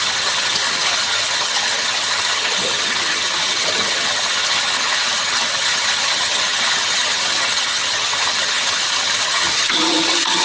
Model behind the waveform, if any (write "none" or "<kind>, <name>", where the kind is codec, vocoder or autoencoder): vocoder, HiFi-GAN